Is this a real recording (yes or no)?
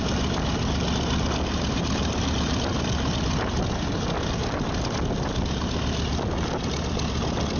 no